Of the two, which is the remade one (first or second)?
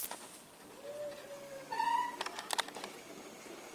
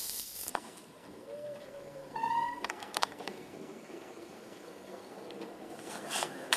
second